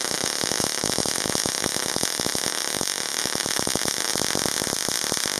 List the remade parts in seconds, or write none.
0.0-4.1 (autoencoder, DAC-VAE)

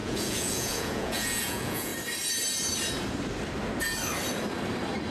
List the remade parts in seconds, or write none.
0.0-1.9 (vocoder, Vocos)

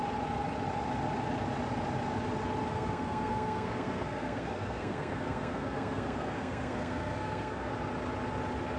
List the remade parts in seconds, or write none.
2.7-7.7 (codec, SNAC)

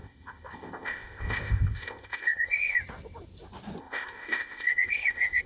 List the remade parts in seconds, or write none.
0.0-2.8 (codec, ZipCodec); 3.8-5.5

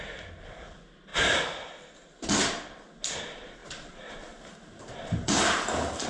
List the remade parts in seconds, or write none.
none

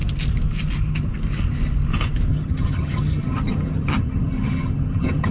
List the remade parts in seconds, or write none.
2.3-5.3 (vocoder, HiFi-GAN)

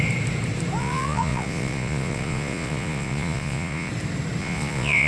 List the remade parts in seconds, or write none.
0.8-3.9 (vocoder, Vocos); 4.4-5.1

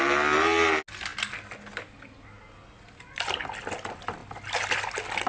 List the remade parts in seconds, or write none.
none